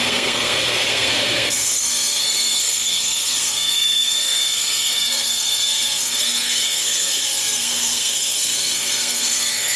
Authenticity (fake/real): fake